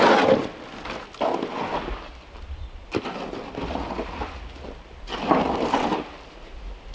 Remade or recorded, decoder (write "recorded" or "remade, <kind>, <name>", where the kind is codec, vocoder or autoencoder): recorded